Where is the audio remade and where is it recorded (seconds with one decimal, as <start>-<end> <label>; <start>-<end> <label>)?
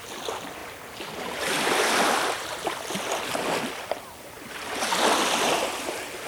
0.0-6.3 recorded